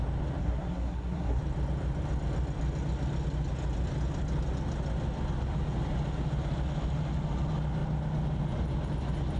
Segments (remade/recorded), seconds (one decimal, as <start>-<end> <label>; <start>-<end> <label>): 0.0-0.4 recorded; 0.4-1.4 remade; 1.4-9.4 recorded